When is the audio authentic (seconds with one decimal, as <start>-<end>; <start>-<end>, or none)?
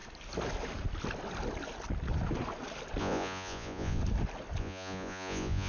0.0-3.0; 4.0-4.6